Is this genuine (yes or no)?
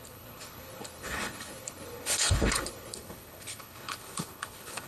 no